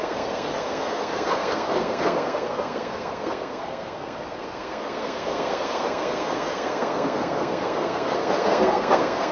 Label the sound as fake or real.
fake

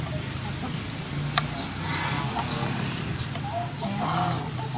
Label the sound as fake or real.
real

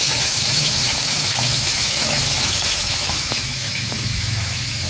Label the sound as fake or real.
fake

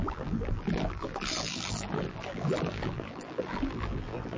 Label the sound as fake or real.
fake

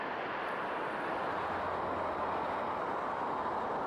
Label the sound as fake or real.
real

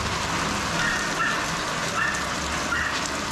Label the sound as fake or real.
real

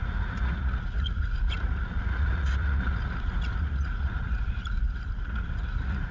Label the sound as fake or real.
fake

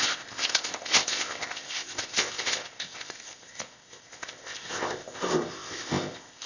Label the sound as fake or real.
fake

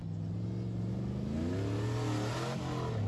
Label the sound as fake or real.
real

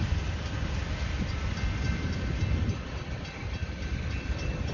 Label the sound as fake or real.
real